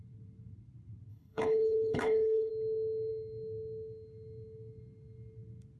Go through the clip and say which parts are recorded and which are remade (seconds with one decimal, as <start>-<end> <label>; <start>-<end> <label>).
0.0-1.1 recorded; 1.1-2.5 remade; 2.5-5.8 recorded